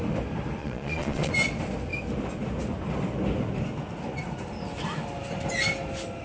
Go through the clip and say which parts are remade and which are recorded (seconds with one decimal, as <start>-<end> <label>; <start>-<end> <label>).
0.0-0.6 recorded; 0.6-1.3 remade; 1.3-6.2 recorded